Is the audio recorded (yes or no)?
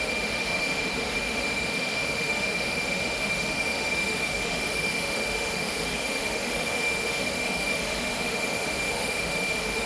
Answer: no